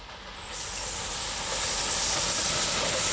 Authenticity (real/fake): fake